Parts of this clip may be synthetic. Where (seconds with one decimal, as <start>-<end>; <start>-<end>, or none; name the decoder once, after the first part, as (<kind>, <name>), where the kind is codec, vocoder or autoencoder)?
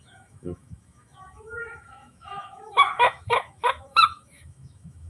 0.0-5.1 (autoencoder, DAC-VAE)